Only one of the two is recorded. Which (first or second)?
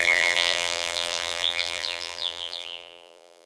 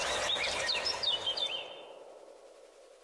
second